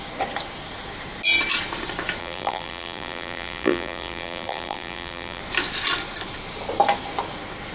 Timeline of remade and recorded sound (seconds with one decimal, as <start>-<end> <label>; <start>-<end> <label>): 0.0-2.2 recorded; 2.2-5.4 remade; 5.4-7.7 recorded